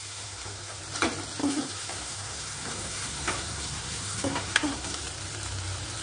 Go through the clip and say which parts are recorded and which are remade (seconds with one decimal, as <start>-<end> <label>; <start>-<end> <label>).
0.0-0.8 remade; 0.8-1.4 recorded; 1.4-5.0 remade; 5.0-6.0 recorded